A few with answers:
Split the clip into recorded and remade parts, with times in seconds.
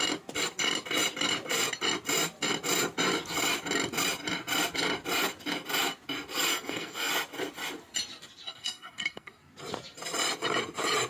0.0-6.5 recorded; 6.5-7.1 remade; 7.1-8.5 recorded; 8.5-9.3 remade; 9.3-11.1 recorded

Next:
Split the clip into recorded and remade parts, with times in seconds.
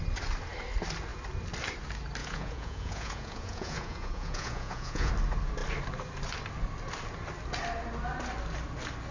0.0-2.2 recorded; 2.2-5.1 remade; 5.1-9.1 recorded